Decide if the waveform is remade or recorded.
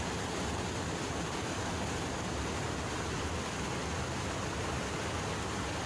recorded